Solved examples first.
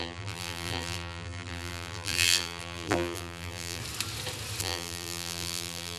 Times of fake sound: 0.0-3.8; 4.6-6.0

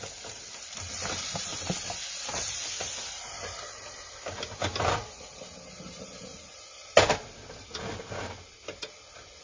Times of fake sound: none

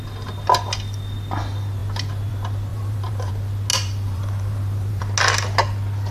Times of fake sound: 2.7-3.3; 3.7-5.0

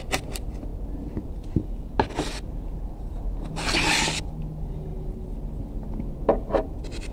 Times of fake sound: none

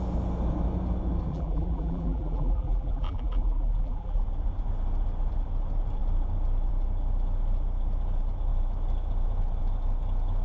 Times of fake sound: 1.3-4.2

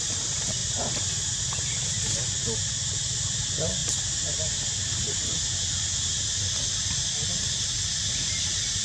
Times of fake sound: none

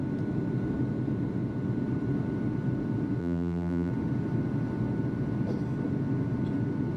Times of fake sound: 3.2-3.9